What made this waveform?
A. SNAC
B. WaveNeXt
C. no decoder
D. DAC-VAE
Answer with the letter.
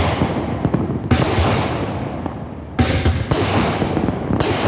C